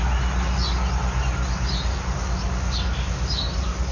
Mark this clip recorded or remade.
recorded